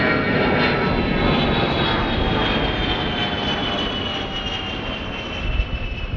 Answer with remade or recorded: recorded